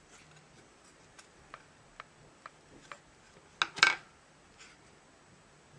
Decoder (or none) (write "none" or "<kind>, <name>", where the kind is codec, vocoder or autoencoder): none